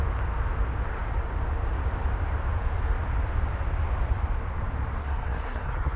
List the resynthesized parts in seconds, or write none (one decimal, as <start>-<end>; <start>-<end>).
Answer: 5.0-6.0